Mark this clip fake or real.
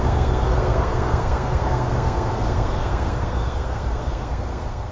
fake